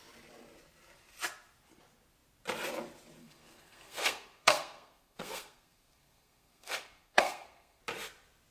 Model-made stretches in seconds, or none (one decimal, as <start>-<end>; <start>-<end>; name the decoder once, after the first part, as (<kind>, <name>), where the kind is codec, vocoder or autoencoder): 3.2-7.8 (codec, SNAC)